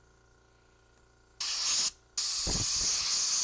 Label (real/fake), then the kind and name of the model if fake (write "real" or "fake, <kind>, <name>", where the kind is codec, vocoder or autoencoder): real